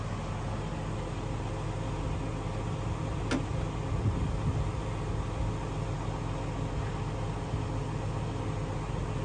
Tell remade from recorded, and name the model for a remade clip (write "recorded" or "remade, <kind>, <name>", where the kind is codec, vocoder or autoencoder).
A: recorded